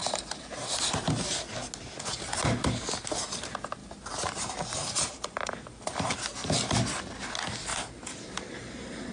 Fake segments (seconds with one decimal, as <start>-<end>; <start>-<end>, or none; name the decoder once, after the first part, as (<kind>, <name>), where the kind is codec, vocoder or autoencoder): 0.0-0.7 (vocoder, BigVGAN v2); 3.8-6.1; 7.7-9.1

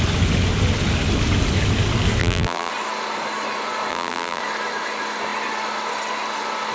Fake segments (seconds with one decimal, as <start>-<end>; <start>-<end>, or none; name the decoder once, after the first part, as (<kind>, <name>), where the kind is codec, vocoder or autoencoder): 2.2-2.7 (vocoder, BigVGAN v2); 3.9-4.4